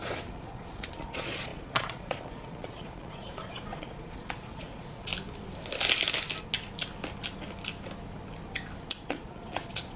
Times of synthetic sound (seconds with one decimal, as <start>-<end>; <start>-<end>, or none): 0.0-5.1; 9.1-10.0